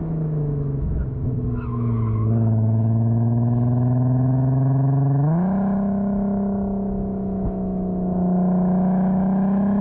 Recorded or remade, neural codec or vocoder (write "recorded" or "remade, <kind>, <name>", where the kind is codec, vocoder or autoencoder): remade, autoencoder, DAC-VAE